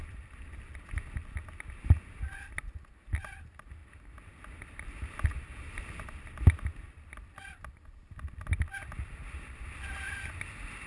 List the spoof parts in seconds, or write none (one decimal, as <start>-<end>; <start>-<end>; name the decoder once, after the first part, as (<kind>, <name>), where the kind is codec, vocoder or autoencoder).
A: none